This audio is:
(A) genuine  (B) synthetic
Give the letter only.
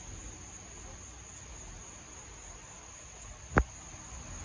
A